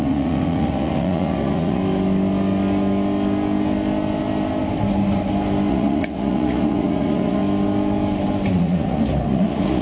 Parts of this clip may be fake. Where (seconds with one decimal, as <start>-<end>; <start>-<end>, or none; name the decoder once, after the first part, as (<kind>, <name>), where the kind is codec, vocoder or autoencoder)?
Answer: 0.0-1.8 (vocoder, Vocos); 5.7-7.4; 8.5-9.8